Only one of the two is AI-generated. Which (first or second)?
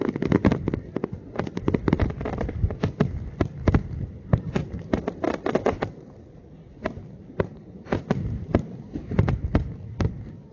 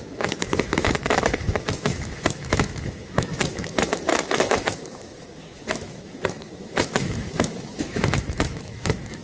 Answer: second